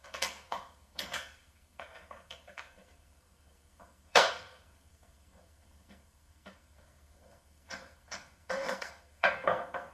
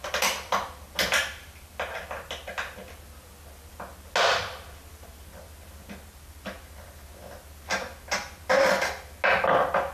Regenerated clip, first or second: first